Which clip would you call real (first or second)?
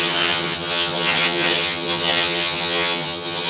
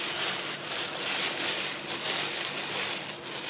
second